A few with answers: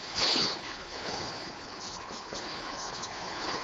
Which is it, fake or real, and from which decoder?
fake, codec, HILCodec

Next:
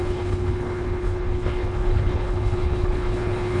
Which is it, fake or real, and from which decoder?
fake, codec, HILCodec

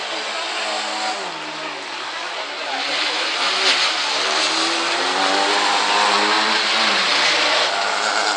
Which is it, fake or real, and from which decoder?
real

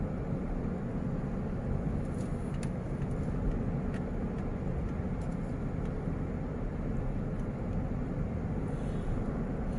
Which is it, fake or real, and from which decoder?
real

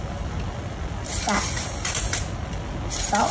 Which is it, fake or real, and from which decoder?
real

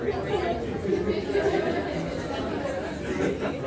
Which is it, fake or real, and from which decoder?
real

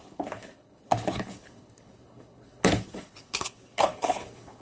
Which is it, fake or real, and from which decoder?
fake, codec, HILCodec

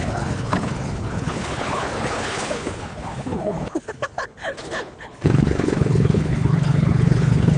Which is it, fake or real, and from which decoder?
fake, codec, HILCodec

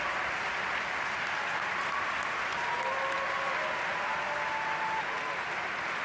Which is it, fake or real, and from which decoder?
real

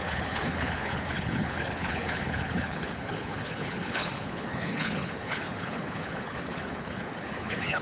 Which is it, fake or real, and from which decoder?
fake, codec, HILCodec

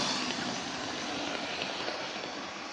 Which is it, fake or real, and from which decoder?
real